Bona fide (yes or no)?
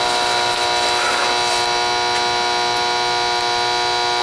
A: yes